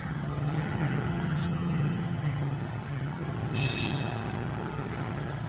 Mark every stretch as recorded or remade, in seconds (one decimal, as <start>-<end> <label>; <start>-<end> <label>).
0.0-5.5 remade